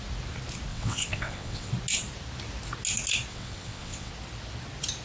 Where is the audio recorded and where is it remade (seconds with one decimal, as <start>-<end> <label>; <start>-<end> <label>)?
0.0-0.7 recorded; 0.7-1.7 remade; 1.7-3.3 recorded; 3.3-4.1 remade; 4.1-5.0 recorded